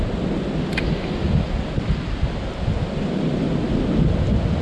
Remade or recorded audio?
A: recorded